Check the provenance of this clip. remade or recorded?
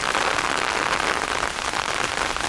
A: recorded